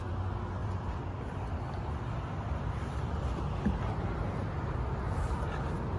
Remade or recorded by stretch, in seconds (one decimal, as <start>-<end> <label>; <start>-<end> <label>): 0.0-0.6 recorded; 0.6-4.0 remade; 4.0-4.4 recorded; 4.4-5.0 remade; 5.0-6.0 recorded